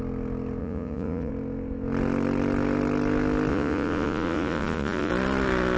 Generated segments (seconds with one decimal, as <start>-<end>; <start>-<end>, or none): 0.6-1.3; 3.5-5.1